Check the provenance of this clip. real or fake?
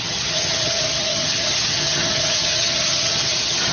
fake